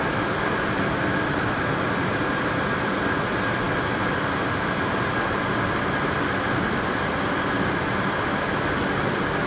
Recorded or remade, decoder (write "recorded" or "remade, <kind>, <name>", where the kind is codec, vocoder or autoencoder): recorded